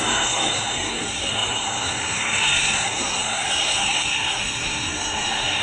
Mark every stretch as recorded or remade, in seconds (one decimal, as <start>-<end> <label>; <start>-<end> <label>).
0.0-5.6 remade